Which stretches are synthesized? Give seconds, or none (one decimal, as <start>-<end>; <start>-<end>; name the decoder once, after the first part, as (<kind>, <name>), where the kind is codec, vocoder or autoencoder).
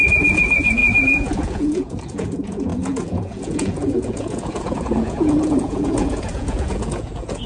0.0-7.5 (vocoder, Vocos)